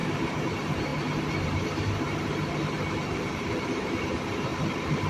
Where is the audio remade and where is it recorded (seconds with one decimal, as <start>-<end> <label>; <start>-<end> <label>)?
0.0-4.5 remade; 4.5-5.1 recorded